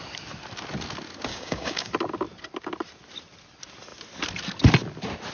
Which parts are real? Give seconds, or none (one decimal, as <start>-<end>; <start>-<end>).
0.0-1.3; 1.9-5.3